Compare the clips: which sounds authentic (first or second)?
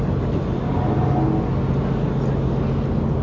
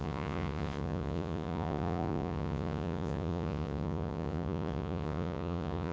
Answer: first